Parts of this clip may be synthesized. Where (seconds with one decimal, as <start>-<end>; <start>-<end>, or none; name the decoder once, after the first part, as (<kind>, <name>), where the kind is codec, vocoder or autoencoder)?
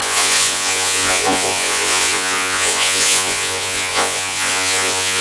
0.0-5.2 (vocoder, Vocos)